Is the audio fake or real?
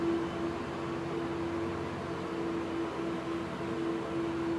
real